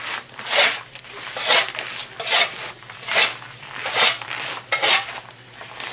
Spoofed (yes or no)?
yes